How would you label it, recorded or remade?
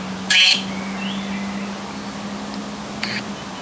recorded